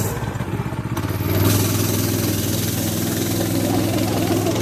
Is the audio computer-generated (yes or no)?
no